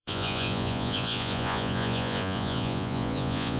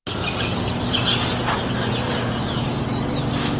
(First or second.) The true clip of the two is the second